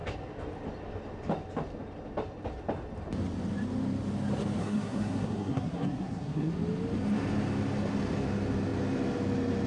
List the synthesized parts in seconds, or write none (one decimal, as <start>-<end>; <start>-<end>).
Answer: 4.6-6.5